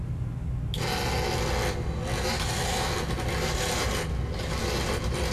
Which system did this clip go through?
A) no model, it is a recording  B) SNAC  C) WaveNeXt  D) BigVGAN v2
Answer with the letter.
A